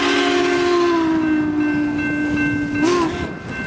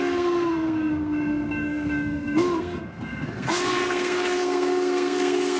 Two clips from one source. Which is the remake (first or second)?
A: second